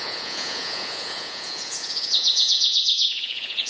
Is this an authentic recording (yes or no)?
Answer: no